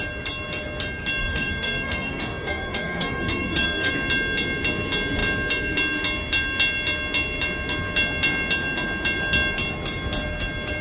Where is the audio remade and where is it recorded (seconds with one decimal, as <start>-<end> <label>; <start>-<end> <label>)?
0.0-1.2 recorded; 1.2-3.9 remade; 3.9-10.8 recorded